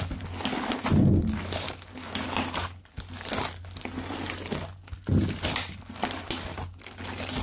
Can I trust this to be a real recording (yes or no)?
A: yes